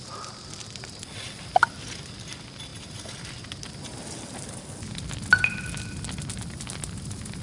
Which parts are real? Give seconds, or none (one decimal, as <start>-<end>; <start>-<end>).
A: 0.0-7.4